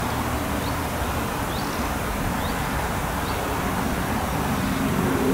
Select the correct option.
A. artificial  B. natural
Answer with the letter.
B